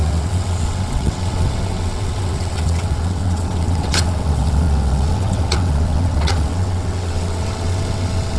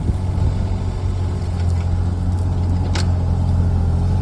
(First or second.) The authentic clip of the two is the second